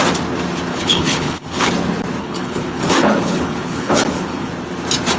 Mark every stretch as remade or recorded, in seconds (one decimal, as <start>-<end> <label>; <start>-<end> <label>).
0.0-0.7 recorded; 0.7-1.7 remade; 1.7-2.2 recorded; 2.2-4.5 remade; 4.5-5.2 recorded